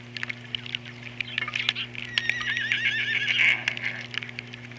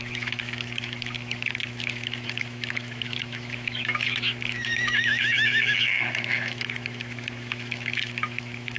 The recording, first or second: first